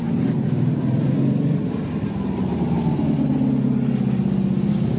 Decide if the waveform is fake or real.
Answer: real